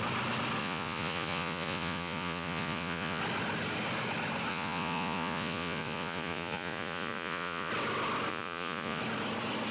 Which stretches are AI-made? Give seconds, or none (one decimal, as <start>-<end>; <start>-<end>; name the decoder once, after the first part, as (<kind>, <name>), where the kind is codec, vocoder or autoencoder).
0.6-3.2 (vocoder, Vocos); 4.5-7.7; 8.3-9.0